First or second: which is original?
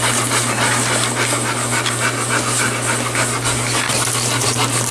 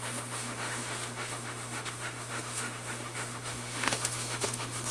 first